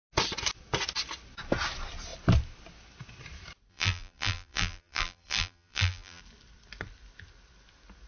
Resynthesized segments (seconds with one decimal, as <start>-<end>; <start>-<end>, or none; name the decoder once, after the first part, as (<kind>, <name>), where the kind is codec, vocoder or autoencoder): 3.7-6.2 (vocoder, BigVGAN v2)